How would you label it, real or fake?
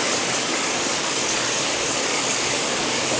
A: fake